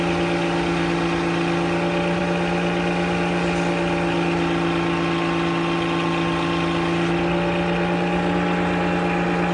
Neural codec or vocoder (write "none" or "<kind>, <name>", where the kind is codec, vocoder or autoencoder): none